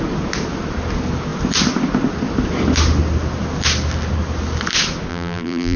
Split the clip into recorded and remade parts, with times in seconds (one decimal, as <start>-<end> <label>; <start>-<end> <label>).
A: 0.0-5.1 recorded; 5.1-5.8 remade